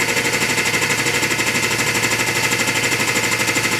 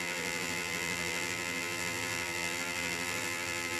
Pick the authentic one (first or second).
first